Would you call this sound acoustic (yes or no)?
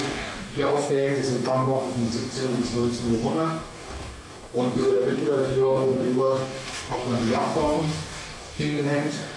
no